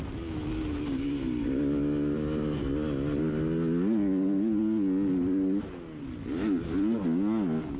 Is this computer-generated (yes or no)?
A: no